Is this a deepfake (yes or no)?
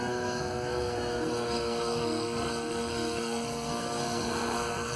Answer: yes